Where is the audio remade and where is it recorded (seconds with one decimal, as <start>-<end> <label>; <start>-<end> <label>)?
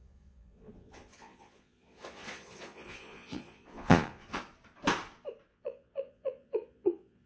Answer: 0.0-4.4 remade; 4.4-5.5 recorded; 5.5-7.3 remade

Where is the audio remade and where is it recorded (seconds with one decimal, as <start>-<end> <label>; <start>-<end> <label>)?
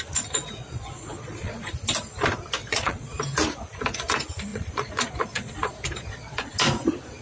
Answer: 0.0-0.4 recorded; 0.4-1.7 remade; 1.7-2.6 recorded; 2.6-3.2 remade; 3.2-4.5 recorded; 4.5-6.5 remade; 6.5-7.2 recorded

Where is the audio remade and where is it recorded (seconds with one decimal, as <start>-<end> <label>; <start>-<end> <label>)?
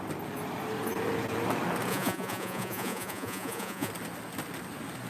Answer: 0.0-1.9 recorded; 1.9-3.9 remade; 3.9-5.1 recorded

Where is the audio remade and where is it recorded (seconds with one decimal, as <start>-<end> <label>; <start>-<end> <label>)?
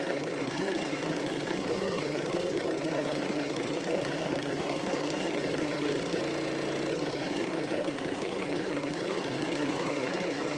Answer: 0.0-6.2 remade; 6.2-6.9 recorded; 6.9-10.6 remade